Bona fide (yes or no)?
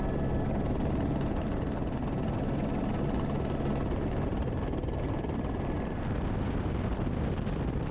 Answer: yes